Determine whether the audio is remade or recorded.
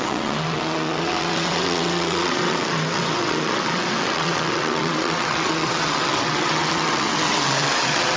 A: remade